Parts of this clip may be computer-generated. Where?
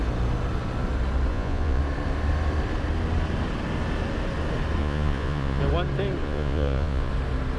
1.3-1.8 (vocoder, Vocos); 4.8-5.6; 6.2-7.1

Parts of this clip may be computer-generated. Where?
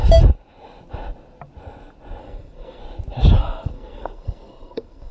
2.2-2.8 (codec, SNAC); 3.4-5.1